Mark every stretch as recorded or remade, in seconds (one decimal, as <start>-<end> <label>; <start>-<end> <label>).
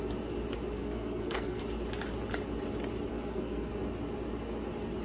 0.0-0.8 recorded; 0.8-1.6 remade; 1.6-3.1 recorded; 3.1-3.7 remade; 3.7-5.0 recorded